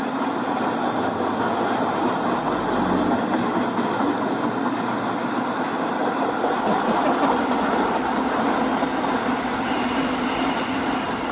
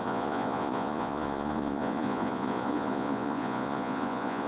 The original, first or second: first